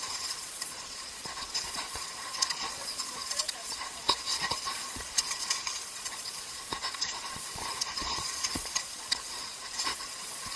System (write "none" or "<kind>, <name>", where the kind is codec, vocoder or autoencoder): vocoder, Vocos